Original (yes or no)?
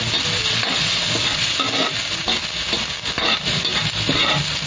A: yes